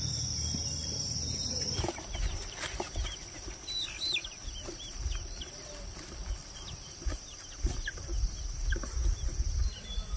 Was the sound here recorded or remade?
recorded